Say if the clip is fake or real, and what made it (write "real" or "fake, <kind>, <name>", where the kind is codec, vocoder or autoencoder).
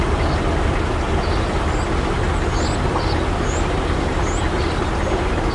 real